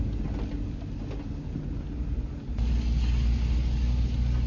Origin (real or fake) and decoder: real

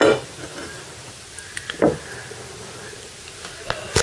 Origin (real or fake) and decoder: real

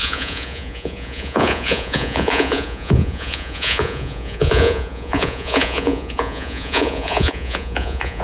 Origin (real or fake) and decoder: fake, vocoder, Vocos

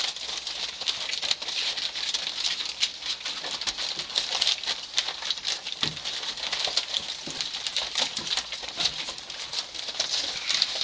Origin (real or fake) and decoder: real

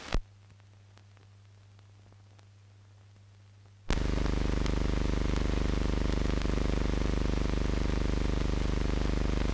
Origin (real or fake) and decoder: real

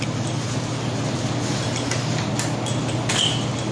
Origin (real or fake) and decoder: real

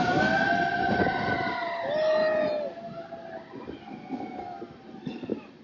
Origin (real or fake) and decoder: real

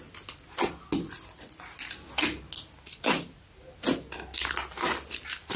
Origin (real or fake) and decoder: real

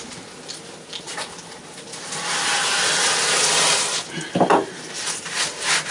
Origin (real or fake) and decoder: real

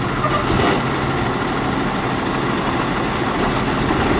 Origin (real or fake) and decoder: real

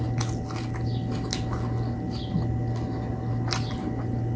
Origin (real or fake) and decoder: real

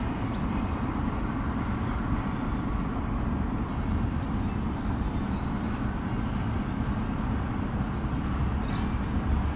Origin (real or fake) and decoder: real